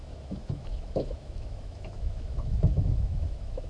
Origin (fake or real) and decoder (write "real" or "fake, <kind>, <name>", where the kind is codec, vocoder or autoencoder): fake, autoencoder, DAC-VAE